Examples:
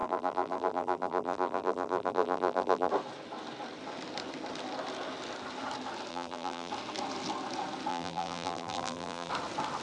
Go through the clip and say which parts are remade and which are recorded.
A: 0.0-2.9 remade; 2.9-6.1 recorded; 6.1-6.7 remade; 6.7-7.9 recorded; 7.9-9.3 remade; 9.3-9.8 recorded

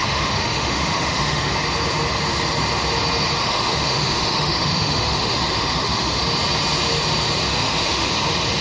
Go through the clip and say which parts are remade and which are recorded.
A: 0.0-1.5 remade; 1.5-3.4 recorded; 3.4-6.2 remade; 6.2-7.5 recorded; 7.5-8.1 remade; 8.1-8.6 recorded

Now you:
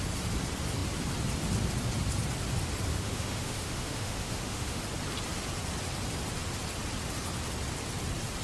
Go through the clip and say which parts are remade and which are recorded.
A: 0.0-2.9 recorded; 2.9-4.8 remade; 4.8-8.4 recorded

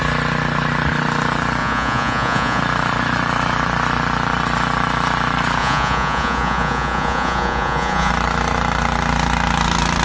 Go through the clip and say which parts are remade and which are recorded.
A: 0.0-1.6 recorded; 1.6-2.6 remade; 2.6-5.6 recorded; 5.6-8.1 remade; 8.1-10.0 recorded

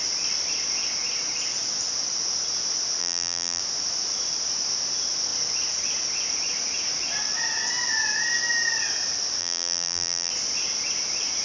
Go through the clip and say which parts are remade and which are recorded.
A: 0.0-3.0 recorded; 3.0-3.6 remade; 3.6-9.4 recorded; 9.4-10.3 remade; 10.3-11.4 recorded

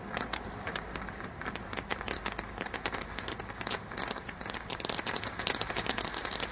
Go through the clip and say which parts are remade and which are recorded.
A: 0.0-1.9 remade; 1.9-2.9 recorded; 2.9-6.5 remade